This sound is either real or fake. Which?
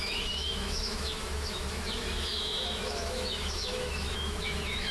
fake